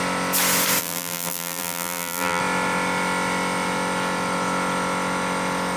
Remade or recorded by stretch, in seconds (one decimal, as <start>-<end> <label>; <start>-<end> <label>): 0.0-0.8 recorded; 0.8-2.4 remade; 2.4-5.8 recorded